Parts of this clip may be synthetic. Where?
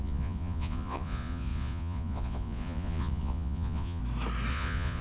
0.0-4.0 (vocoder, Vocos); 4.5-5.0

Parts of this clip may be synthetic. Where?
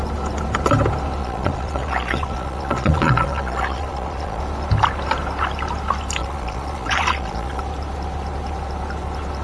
1.2-4.4 (vocoder, Vocos); 6.2-7.6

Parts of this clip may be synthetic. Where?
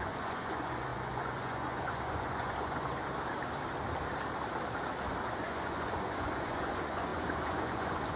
0.0-3.0 (vocoder, Vocos); 5.4-8.2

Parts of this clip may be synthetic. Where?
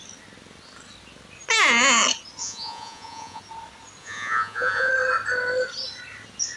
2.4-3.4 (vocoder, Vocos); 4.0-4.9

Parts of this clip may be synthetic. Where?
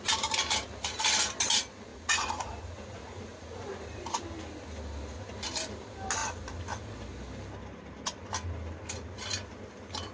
1.9-4.2 (vocoder, Vocos)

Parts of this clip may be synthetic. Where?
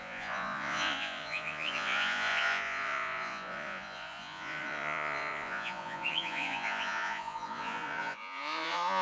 0.0-9.0 (vocoder, Vocos)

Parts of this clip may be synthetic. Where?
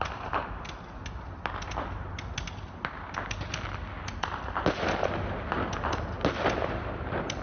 none